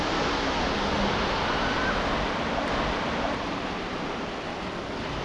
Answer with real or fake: real